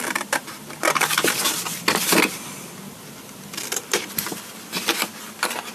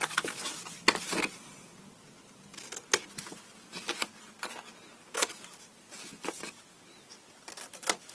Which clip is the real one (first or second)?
second